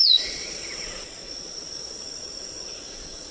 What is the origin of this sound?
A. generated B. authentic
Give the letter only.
A